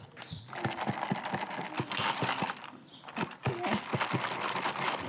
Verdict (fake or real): real